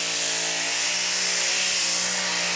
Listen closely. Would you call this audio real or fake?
real